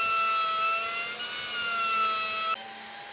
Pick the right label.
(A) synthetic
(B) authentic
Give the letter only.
B